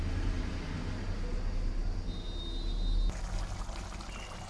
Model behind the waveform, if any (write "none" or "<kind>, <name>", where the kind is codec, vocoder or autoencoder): none